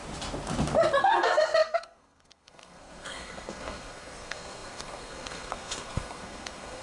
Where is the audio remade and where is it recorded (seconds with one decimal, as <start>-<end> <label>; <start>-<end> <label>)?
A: 0.0-1.0 recorded; 1.0-6.8 remade